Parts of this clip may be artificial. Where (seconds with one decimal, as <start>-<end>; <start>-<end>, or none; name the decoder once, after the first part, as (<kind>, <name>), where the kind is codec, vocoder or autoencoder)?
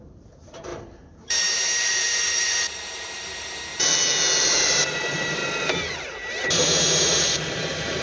0.0-3.7 (vocoder, BigVGAN v2); 4.4-5.4; 6.3-8.0